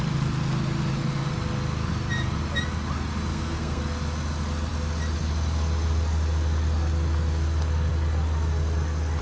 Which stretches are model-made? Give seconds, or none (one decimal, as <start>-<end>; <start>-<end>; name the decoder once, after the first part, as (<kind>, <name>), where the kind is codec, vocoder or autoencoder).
3.3-3.8 (codec, SNAC)